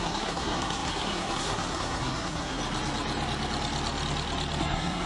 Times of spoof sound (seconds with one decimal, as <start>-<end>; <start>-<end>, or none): 0.0-2.6; 4.6-5.1